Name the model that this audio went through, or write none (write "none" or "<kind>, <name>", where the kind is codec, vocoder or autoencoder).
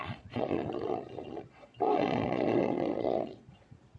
vocoder, Vocos